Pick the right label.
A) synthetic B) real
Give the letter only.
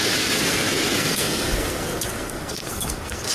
A